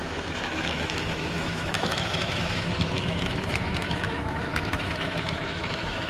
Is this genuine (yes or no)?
no